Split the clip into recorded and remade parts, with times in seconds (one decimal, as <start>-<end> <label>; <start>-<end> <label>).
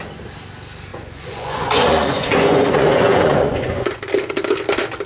0.0-0.9 recorded; 0.9-4.0 remade; 4.0-5.1 recorded